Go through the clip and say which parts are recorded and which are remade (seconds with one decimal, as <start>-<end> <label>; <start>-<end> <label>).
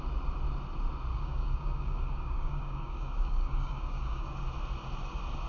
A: 0.0-1.1 recorded; 1.1-4.4 remade; 4.4-5.5 recorded